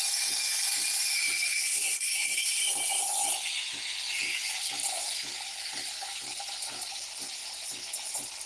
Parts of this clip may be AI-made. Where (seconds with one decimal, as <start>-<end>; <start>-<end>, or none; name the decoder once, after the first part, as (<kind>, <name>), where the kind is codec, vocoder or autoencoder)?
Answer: 1.5-2.6 (codec, SNAC)